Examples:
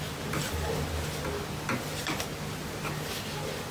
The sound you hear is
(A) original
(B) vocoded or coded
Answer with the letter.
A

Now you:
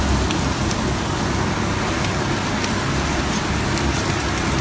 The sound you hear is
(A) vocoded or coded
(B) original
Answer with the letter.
B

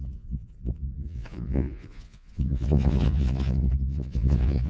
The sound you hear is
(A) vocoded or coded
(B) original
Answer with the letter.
A